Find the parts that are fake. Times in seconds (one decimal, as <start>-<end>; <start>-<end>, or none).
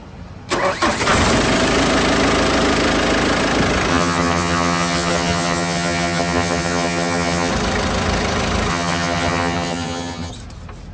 3.9-7.5; 8.7-10.3